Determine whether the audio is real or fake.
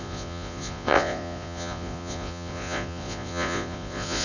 fake